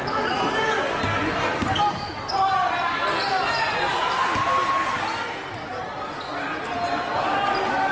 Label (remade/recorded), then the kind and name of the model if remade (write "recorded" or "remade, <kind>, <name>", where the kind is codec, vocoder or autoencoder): recorded